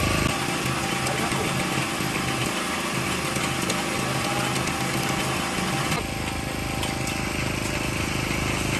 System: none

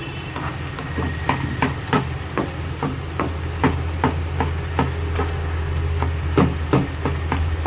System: vocoder, BigVGAN v2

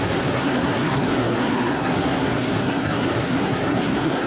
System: codec, SNAC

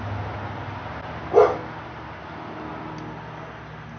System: none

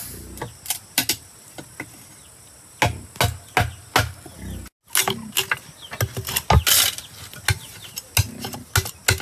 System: none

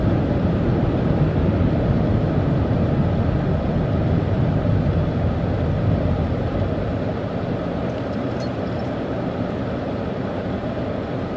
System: none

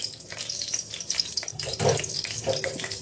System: codec, DAC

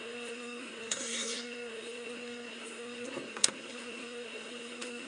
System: codec, SNAC